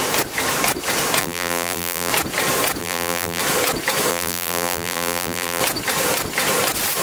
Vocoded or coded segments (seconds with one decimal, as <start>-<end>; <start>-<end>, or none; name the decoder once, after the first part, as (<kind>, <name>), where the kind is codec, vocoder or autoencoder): 1.2-2.1 (vocoder, BigVGAN v2); 2.8-3.4; 4.1-5.6